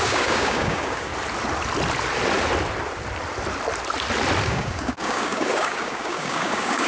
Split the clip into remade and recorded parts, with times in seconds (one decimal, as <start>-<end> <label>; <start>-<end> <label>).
0.0-1.1 remade; 1.1-4.4 recorded; 4.4-6.9 remade